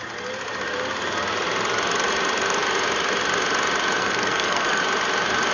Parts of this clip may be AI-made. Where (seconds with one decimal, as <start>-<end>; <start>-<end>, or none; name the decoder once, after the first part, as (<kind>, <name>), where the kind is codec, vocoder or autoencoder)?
4.0-4.8 (codec, SNAC)